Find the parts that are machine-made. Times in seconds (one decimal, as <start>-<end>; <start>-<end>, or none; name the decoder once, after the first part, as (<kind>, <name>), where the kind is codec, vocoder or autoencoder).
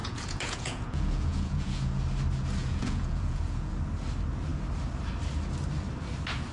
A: 0.0-2.0 (vocoder, Vocos); 2.6-3.7